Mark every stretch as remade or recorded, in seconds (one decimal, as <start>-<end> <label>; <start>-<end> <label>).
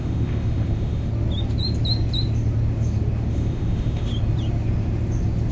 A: 0.0-1.1 remade; 1.1-3.3 recorded; 3.3-4.1 remade; 4.1-5.5 recorded